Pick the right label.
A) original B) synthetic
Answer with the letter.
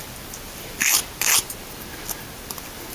A